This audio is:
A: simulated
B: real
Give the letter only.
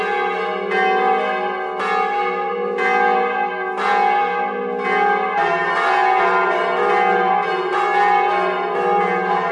B